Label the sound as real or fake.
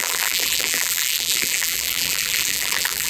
fake